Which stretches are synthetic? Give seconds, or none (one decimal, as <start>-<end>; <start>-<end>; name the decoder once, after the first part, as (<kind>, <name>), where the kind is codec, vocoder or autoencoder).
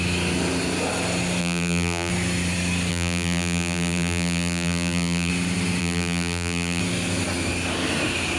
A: 1.4-2.1 (vocoder, BigVGAN v2); 2.9-5.3; 5.8-6.8